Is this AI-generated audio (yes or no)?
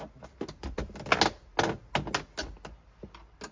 no